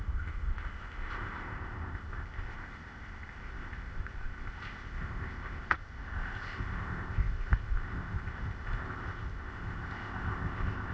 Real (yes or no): no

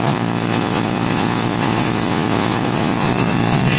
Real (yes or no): no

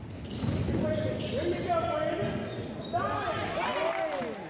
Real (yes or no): yes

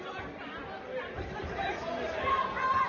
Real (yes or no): no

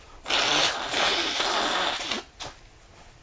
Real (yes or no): yes